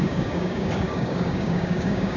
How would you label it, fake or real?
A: fake